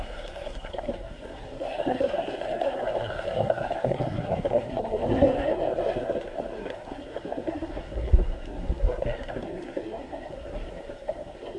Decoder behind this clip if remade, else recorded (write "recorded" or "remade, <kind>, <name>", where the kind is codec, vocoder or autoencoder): remade, codec, SNAC